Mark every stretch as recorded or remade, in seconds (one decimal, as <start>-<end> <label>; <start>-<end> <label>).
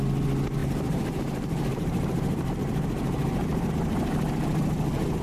0.0-0.6 recorded; 0.6-3.7 remade; 3.7-5.2 recorded